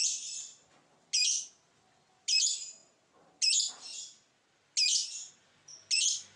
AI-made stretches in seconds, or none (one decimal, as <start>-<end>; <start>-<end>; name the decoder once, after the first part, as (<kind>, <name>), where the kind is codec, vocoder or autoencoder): none

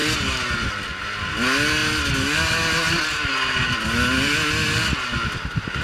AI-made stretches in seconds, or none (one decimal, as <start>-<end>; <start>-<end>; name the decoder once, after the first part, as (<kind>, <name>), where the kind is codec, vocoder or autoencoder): none

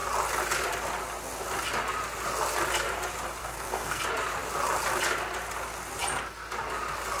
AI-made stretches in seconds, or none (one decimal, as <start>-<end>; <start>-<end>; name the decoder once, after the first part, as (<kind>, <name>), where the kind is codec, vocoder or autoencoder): 3.4-4.0 (codec, SNAC)

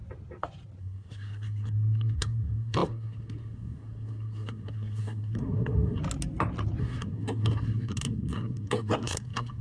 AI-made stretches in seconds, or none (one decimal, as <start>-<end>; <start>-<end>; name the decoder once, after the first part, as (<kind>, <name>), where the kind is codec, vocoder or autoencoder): 0.8-6.0 (codec, SNAC); 6.8-9.6

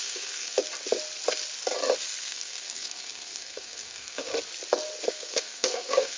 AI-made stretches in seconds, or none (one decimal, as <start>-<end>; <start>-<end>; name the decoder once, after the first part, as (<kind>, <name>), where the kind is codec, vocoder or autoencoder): 0.0-0.6 (codec, SNAC); 2.2-4.3; 5.1-6.2

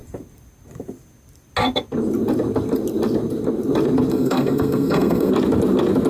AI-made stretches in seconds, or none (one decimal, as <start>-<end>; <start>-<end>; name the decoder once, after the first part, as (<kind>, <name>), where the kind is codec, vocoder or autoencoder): 4.1-5.3 (codec, SNAC)

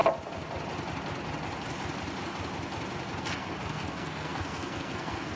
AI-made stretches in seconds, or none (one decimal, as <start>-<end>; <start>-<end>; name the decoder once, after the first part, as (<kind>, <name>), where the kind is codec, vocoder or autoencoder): 3.2-5.4 (codec, SNAC)